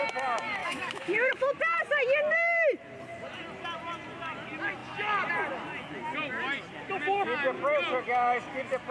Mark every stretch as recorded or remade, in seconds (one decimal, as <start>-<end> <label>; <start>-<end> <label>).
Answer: 0.0-0.6 recorded; 0.6-1.3 remade; 1.3-8.9 recorded